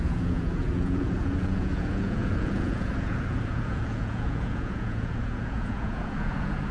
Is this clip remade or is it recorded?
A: remade